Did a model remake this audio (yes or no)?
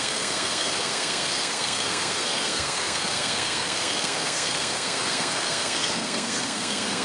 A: yes